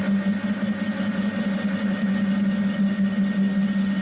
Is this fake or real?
real